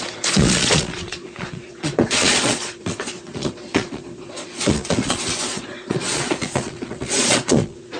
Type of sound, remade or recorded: remade